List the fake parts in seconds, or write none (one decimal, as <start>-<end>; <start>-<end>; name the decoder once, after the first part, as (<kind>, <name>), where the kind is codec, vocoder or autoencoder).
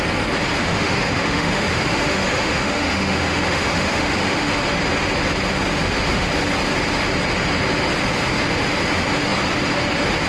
0.6-4.6 (autoencoder, DAC-VAE); 5.7-6.3